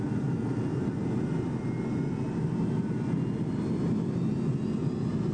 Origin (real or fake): real